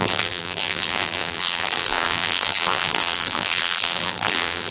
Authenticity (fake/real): fake